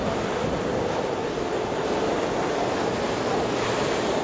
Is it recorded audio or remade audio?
recorded